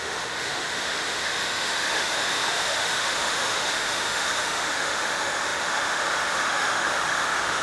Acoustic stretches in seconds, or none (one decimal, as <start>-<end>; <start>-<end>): none